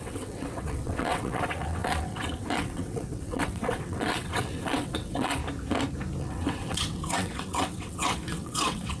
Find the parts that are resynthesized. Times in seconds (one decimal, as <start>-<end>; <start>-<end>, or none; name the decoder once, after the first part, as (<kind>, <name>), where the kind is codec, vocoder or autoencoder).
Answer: 0.0-5.4 (vocoder, WaveNeXt); 6.2-9.0